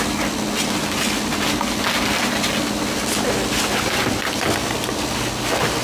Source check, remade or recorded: recorded